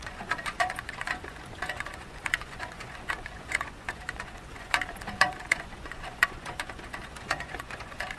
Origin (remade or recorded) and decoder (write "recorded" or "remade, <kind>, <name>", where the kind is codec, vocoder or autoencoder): remade, vocoder, Vocos